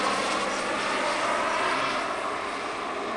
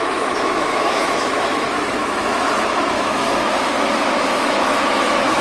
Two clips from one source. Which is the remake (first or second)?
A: second